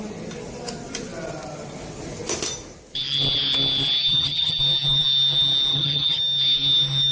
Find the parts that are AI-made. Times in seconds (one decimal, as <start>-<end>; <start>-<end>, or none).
4.1-4.6; 5.7-6.2